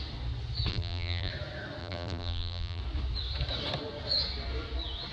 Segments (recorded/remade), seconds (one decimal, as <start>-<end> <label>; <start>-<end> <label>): 0.0-0.7 recorded; 0.7-1.3 remade; 1.3-1.8 recorded; 1.8-2.8 remade; 2.8-5.1 recorded